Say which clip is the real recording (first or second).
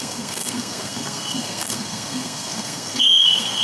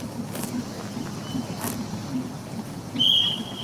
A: second